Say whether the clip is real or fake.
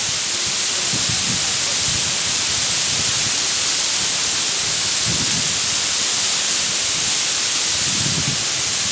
real